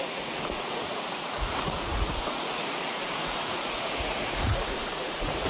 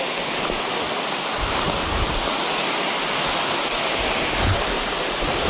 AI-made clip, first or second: first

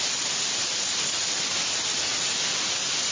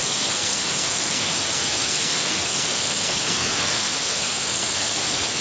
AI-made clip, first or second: second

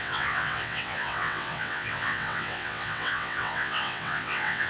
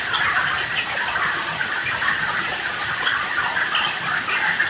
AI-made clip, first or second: first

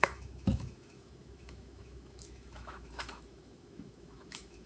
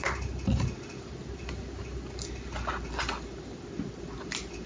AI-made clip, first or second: first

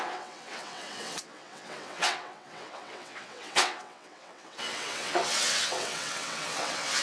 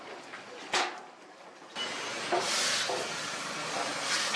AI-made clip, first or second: first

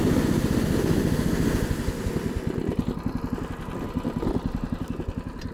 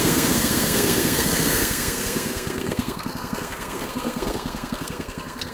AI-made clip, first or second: second